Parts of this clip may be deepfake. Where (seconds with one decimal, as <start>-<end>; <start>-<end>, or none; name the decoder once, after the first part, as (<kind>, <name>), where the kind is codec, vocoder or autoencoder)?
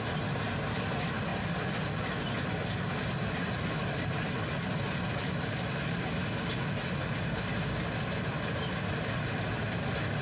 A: none